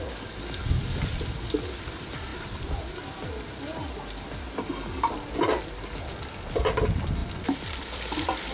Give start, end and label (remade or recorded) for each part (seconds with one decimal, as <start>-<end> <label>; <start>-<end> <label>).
0.0-2.3 recorded; 2.3-3.1 remade; 3.1-7.2 recorded; 7.2-8.5 remade